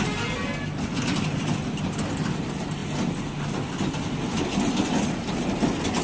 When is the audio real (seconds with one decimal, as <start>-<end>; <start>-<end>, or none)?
0.0-6.0

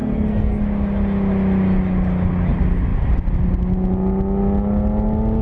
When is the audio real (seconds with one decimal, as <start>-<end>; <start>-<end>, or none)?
0.6-5.4

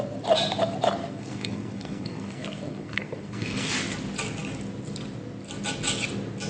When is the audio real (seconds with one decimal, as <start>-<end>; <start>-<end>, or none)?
0.0-1.0; 3.7-6.5

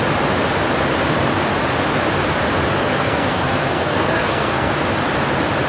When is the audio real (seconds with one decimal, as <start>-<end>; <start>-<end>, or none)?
0.0-2.8; 4.7-5.7

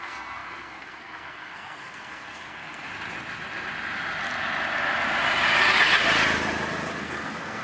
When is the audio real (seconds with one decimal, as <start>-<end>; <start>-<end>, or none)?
2.9-7.0

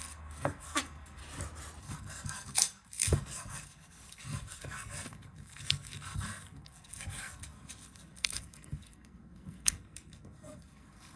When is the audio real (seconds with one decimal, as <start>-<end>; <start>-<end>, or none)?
1.2-1.8

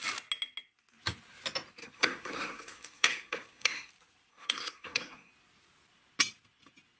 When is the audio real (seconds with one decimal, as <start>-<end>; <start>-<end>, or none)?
0.0-1.8; 3.9-4.3; 5.3-7.0

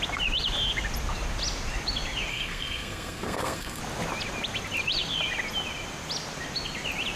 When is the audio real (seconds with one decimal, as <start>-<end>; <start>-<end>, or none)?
0.0-2.3; 3.8-7.2